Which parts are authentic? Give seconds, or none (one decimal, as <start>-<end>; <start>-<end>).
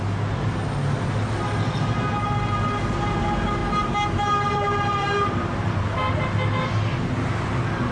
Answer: 0.0-3.6; 5.8-7.9